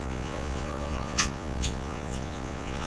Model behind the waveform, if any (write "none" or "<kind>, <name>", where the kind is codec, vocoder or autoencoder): vocoder, Vocos